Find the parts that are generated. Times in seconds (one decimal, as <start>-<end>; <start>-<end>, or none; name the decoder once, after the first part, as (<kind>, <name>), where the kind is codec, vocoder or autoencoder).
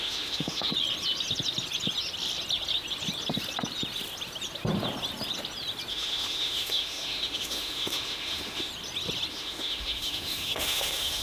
0.0-0.7 (autoencoder, DAC-VAE); 5.9-8.7; 9.3-11.2